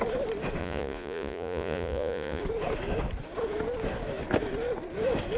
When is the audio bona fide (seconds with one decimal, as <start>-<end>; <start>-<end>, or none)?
0.0-0.6; 2.4-5.4